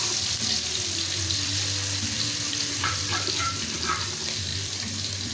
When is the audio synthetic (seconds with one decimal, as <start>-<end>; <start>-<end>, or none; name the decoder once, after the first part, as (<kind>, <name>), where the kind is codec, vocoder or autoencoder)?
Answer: 0.0-1.5 (vocoder, BigVGAN v2); 2.5-3.4; 4.0-5.3